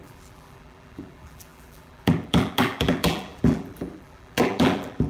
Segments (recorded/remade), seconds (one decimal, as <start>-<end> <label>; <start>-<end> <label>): 0.0-5.1 remade